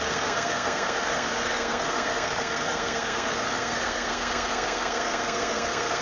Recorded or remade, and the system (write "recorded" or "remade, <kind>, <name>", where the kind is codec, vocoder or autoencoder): remade, codec, SNAC